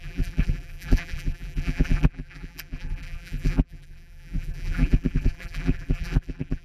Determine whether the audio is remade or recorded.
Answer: remade